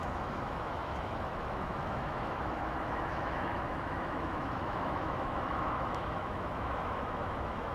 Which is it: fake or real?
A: fake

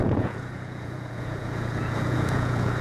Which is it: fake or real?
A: fake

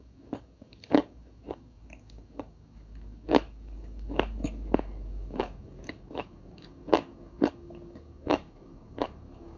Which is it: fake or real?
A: fake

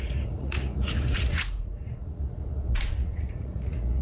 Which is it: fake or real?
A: fake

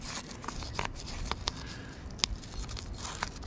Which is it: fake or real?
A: real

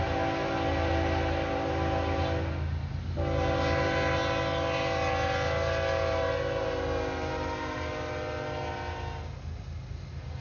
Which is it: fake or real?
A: real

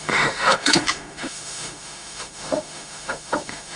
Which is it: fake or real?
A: fake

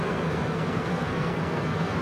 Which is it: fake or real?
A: fake